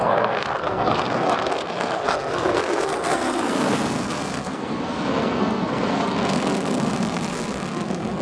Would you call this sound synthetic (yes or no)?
yes